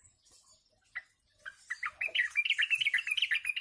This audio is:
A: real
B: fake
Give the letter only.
A